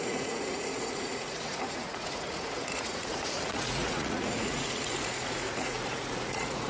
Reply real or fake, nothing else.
fake